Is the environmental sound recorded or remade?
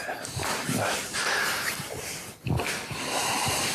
recorded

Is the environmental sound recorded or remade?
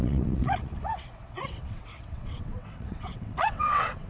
remade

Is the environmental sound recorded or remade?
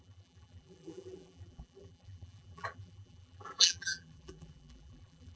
remade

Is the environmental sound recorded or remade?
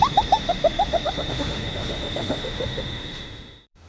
remade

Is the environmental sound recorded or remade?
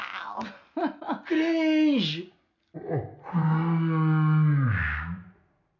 recorded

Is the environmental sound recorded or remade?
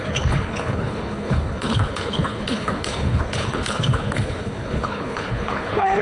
remade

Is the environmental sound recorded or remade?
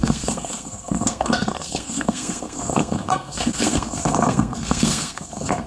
remade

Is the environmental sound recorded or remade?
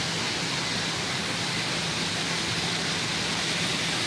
recorded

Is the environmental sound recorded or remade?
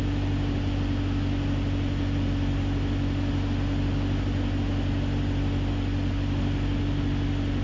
recorded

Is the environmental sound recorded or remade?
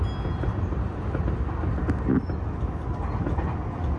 recorded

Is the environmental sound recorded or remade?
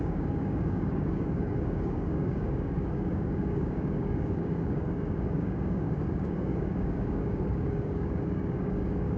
remade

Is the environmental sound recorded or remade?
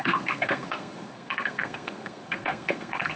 remade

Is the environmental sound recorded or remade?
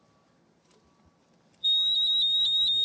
recorded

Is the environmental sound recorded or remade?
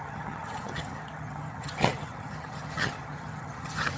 remade